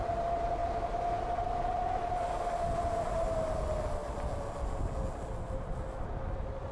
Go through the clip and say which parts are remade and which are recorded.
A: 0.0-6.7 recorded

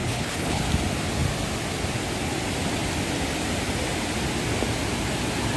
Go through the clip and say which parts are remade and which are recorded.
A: 0.0-0.6 remade; 0.6-5.6 recorded

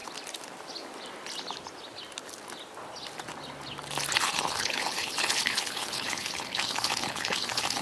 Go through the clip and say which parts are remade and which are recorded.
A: 0.0-4.2 recorded; 4.2-7.8 remade

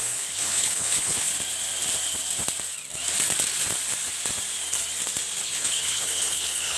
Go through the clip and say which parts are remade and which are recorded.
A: 0.0-1.3 remade; 1.3-5.4 recorded; 5.4-6.8 remade

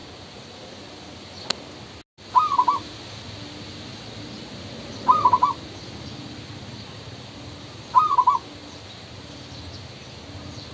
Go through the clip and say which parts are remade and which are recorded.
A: 0.0-10.7 recorded

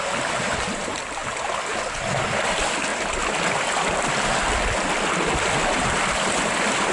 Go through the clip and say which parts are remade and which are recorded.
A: 0.0-6.9 recorded